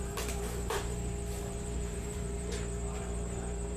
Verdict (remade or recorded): remade